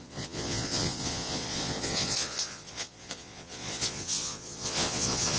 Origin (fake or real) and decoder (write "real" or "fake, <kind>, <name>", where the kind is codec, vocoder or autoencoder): fake, vocoder, Vocos